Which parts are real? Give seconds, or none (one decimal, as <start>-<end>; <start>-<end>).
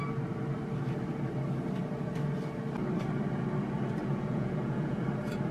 0.0-4.0; 5.0-5.5